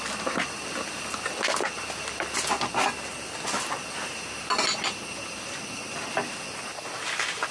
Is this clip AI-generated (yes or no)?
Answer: no